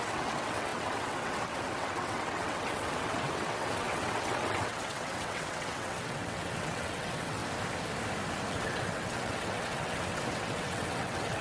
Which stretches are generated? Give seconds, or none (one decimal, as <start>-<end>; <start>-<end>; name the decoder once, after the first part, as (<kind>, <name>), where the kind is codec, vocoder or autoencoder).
0.0-7.4 (vocoder, WaveNeXt); 8.5-11.4